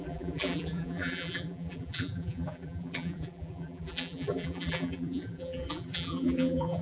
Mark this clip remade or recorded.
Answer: remade